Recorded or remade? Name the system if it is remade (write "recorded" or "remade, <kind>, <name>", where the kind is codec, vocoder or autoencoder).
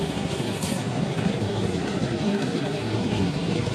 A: remade, codec, SNAC